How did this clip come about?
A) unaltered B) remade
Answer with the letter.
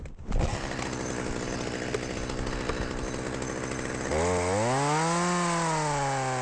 A